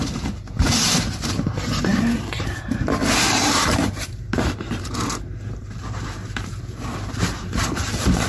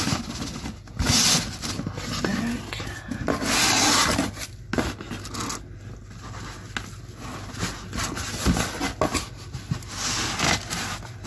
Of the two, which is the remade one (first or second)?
first